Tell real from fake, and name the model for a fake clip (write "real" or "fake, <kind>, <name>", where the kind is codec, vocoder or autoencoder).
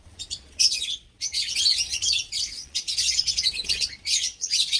fake, vocoder, Vocos